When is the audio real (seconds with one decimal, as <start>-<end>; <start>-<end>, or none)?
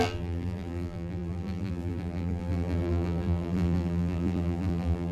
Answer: none